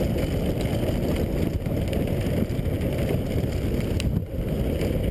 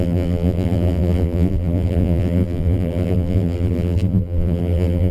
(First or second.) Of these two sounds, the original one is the first